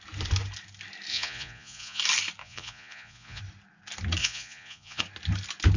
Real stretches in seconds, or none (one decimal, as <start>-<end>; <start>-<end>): 0.0-1.1; 2.0-2.4; 3.4-4.2; 5.0-5.8